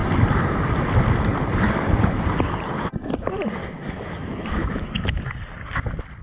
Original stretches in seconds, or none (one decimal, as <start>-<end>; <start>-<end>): 0.0-3.6; 5.2-6.2